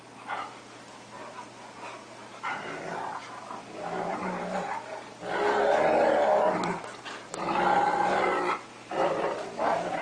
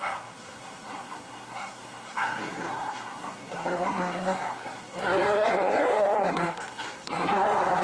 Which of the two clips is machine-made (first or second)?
second